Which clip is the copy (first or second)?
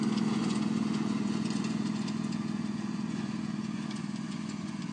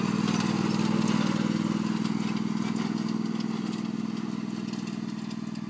first